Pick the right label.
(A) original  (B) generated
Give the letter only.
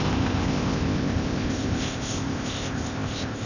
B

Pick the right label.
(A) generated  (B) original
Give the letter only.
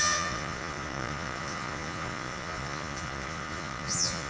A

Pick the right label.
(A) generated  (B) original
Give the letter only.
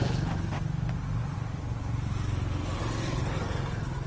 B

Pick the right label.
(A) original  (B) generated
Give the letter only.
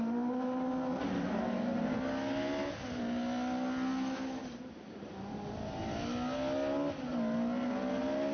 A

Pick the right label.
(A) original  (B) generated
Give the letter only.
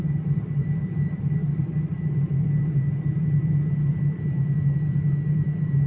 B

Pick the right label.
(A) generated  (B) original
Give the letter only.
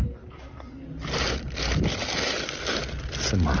B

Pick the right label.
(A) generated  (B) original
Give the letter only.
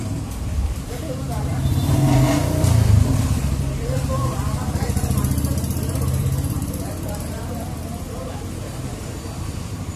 A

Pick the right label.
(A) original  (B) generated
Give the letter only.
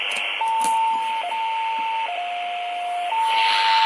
A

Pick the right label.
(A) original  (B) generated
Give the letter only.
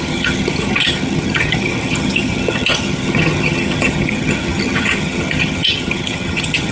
B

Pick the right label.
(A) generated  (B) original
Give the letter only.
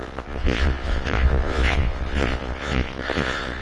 A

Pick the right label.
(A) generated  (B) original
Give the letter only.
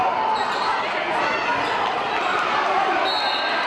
B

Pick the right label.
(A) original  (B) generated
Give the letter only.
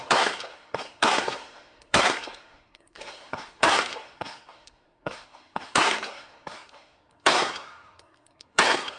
B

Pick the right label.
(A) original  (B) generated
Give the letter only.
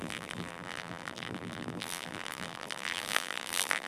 B